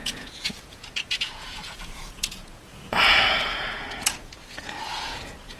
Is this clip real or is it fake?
fake